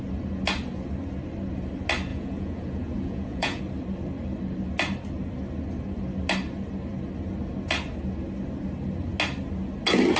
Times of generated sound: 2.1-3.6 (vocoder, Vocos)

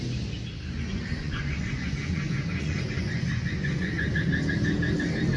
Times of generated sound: 0.9-4.1 (vocoder, Vocos)

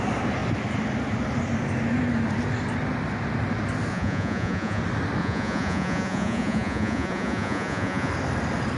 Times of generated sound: 3.9-4.8 (vocoder, Vocos); 5.2-8.1

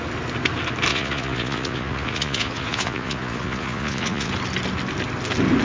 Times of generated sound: 0.9-4.3 (vocoder, Vocos)